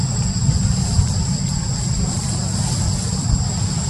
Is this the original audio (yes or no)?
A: yes